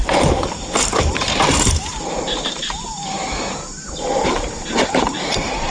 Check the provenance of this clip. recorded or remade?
remade